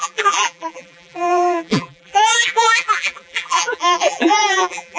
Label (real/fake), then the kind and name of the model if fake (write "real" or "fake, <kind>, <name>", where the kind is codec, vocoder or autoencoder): fake, vocoder, BigVGAN v2